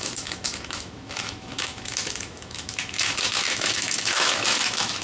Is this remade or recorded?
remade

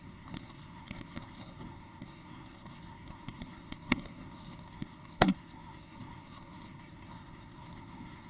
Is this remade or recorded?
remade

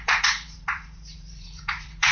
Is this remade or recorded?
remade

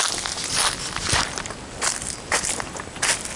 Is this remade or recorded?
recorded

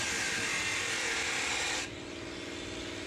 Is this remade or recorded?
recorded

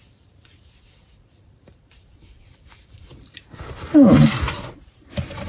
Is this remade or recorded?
remade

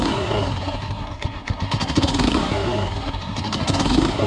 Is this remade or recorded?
remade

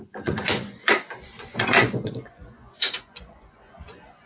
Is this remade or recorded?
remade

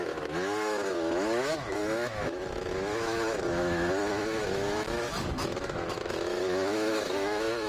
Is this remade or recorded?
remade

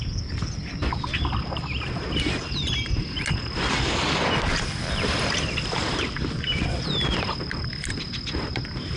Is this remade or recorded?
recorded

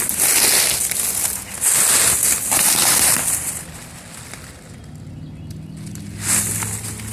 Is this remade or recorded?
recorded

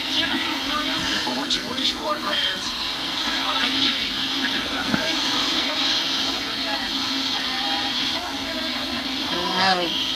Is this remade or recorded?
remade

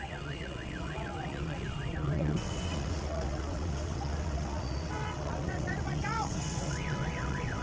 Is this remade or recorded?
remade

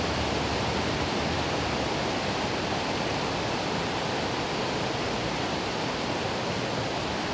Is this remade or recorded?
recorded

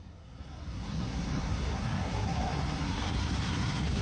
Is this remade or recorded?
remade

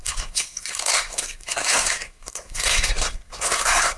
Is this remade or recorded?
remade